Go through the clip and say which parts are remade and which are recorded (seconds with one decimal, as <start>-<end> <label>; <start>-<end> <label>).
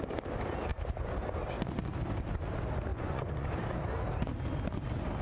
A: 0.0-2.9 recorded; 2.9-3.5 remade; 3.5-5.2 recorded